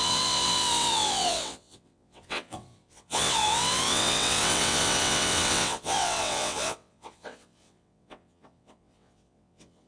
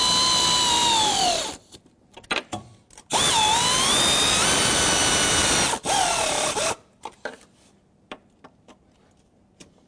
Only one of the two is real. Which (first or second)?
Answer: second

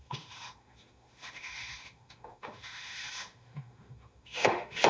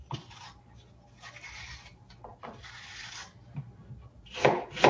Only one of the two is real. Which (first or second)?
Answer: second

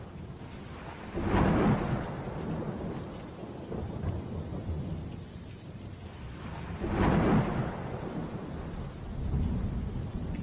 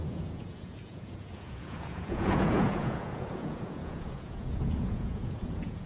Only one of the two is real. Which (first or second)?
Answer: first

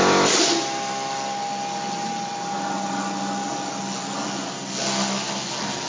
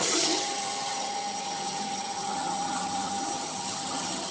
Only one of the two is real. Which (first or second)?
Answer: first